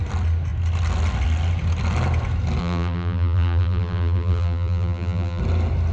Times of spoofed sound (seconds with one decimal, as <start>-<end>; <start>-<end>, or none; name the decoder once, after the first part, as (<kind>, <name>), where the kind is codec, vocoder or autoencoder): 2.6-5.4 (vocoder, BigVGAN v2)